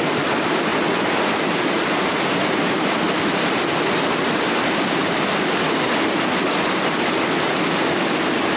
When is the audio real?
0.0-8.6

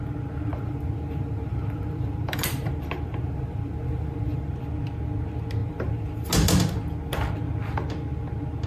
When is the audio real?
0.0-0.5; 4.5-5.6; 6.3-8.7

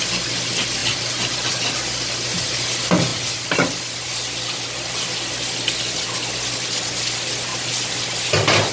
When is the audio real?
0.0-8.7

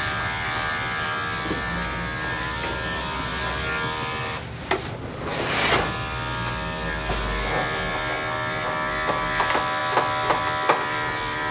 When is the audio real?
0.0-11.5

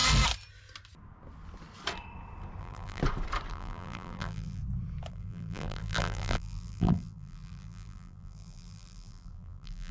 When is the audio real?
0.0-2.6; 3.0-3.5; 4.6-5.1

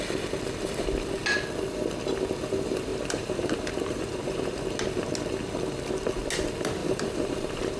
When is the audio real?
0.0-2.9; 4.6-6.8